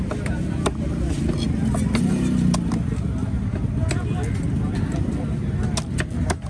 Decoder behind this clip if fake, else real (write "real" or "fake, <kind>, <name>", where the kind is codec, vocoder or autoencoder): real